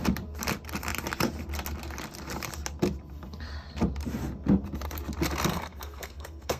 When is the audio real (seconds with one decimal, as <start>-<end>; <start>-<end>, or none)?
0.0-5.5